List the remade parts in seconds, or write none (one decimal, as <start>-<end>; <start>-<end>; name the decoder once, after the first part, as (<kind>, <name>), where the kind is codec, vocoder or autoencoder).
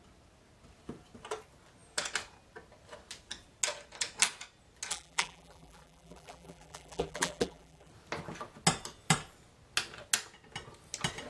4.9-7.9 (vocoder, BigVGAN v2)